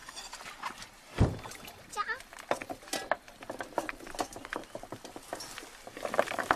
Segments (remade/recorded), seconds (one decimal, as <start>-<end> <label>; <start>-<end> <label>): 0.0-6.6 recorded